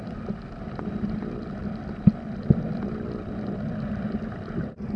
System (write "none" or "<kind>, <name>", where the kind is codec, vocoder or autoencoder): none